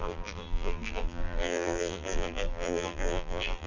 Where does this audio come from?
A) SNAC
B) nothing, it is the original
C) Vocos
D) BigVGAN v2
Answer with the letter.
D